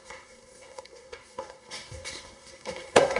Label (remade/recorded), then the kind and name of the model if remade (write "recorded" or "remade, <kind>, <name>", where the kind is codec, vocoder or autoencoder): remade, codec, SNAC